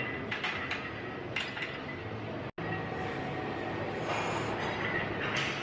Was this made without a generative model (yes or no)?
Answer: yes